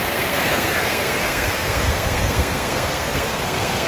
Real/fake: fake